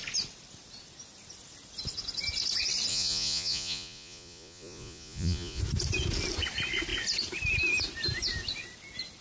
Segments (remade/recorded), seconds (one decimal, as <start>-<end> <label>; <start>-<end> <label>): 0.0-2.9 recorded; 2.9-5.6 remade; 5.6-9.2 recorded